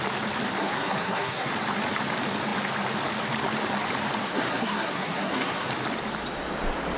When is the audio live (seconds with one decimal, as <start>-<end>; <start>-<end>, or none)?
0.0-0.6; 1.5-4.2; 5.7-7.0